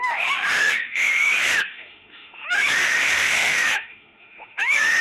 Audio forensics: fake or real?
fake